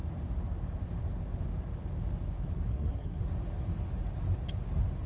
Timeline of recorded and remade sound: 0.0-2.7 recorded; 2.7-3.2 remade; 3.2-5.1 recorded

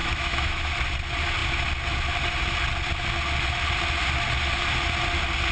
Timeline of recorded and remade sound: 0.0-0.7 remade; 0.7-5.5 recorded

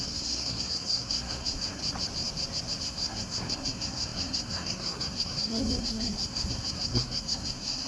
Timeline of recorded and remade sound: 0.0-1.8 remade; 1.8-2.8 recorded; 2.8-7.9 remade

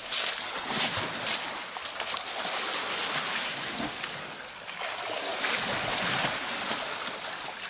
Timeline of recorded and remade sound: 0.0-7.7 recorded

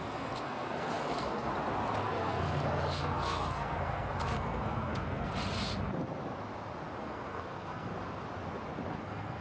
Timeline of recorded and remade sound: 0.0-1.5 remade; 1.5-2.0 recorded; 2.0-5.3 remade; 5.3-7.0 recorded; 7.0-7.9 remade; 7.9-9.0 recorded; 9.0-9.4 remade

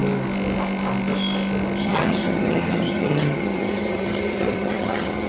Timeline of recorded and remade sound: 0.0-1.8 recorded; 1.8-5.3 remade